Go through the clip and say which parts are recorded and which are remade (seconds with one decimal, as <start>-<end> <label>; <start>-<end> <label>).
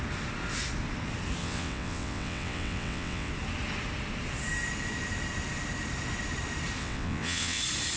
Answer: 0.0-1.4 recorded; 1.4-3.3 remade; 3.3-6.8 recorded; 6.8-7.6 remade; 7.6-8.0 recorded